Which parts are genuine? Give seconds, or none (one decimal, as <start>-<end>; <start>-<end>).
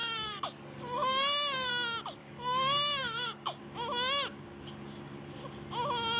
1.7-2.2; 3.6-6.2